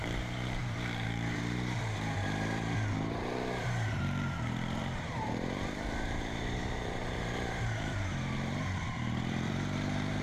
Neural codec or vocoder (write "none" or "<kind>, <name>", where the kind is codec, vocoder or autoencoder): vocoder, BigVGAN v2